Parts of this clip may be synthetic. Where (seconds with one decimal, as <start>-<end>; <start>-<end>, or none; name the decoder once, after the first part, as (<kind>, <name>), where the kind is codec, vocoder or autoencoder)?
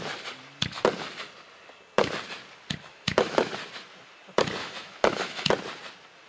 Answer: 2.9-3.5 (autoencoder, DAC-VAE); 4.6-5.5